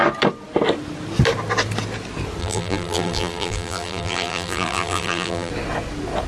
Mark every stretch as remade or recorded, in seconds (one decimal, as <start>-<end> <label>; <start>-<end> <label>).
0.0-2.4 recorded; 2.4-5.5 remade; 5.5-6.3 recorded

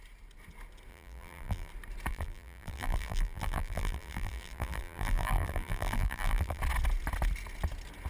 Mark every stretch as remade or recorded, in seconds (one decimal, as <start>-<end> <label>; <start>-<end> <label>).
0.0-0.9 recorded; 0.9-1.7 remade; 1.7-2.1 recorded; 2.1-6.6 remade; 6.6-8.1 recorded

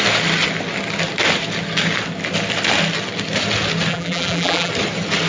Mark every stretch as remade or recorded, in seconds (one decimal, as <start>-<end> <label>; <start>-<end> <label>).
0.0-3.9 recorded; 3.9-4.7 remade; 4.7-5.3 recorded

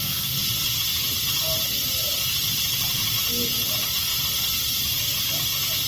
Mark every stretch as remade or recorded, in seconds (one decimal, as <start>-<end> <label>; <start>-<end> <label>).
0.0-0.9 recorded; 0.9-2.6 remade; 2.6-4.1 recorded; 4.1-5.3 remade; 5.3-5.9 recorded

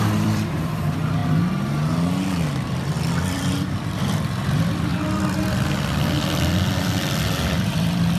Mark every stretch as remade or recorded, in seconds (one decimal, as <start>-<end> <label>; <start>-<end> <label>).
0.0-1.2 remade; 1.2-3.2 recorded; 3.2-8.2 remade

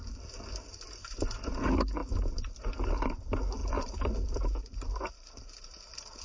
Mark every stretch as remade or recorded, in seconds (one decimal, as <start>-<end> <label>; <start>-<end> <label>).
0.0-6.2 recorded